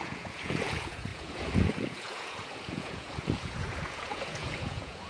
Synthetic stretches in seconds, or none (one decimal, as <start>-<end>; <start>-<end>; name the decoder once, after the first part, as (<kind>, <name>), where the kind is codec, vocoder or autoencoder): 0.0-5.1 (vocoder, Vocos)